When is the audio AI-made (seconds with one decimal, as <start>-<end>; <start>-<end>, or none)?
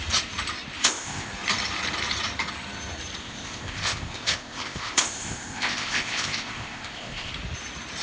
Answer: 0.8-1.3; 3.2-7.3